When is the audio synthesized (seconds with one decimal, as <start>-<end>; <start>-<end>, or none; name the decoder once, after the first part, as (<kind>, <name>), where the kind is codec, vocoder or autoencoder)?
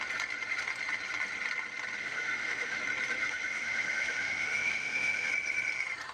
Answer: 2.0-2.8 (autoencoder, DAC-VAE); 3.2-5.3